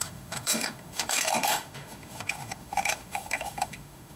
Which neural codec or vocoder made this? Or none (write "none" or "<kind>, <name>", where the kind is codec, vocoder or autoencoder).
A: autoencoder, DAC-VAE